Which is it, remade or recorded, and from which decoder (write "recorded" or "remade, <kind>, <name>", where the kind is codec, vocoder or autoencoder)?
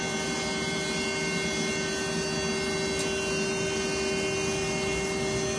recorded